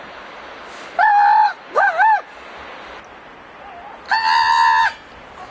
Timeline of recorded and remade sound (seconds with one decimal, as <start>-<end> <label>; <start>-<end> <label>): 0.0-5.5 recorded